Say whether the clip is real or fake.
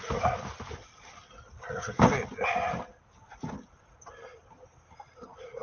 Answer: real